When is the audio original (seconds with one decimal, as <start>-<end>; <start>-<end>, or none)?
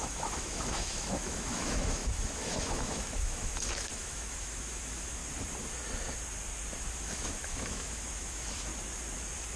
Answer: 5.2-6.9; 8.7-9.6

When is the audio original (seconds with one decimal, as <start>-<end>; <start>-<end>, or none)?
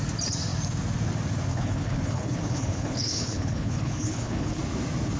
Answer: 0.0-1.5; 4.6-5.2